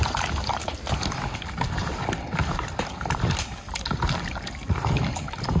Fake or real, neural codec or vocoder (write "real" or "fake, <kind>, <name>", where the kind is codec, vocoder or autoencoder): real